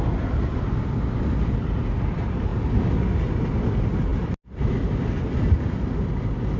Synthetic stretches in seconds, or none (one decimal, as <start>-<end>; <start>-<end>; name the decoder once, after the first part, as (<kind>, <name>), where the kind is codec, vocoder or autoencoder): none